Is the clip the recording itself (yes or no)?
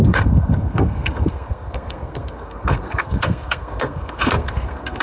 no